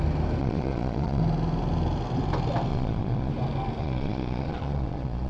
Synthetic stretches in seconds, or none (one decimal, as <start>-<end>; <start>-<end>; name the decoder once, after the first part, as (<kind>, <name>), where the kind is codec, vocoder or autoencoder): 0.4-1.2 (vocoder, Vocos); 2.7-3.3; 3.8-5.3